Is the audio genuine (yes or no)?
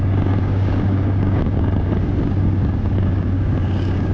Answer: no